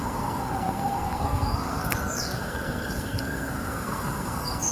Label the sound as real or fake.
fake